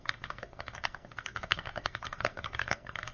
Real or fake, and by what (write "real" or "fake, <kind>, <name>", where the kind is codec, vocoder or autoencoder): fake, codec, SNAC